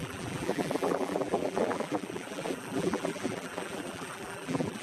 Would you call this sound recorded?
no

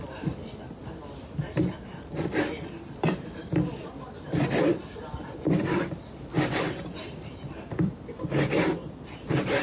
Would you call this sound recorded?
no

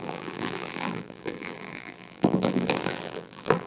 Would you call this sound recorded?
no